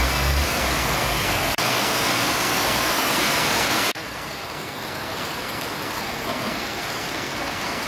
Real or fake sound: fake